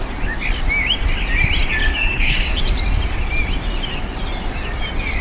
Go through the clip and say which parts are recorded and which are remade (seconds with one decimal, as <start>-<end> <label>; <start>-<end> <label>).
0.0-1.8 recorded; 1.8-2.5 remade; 2.5-5.2 recorded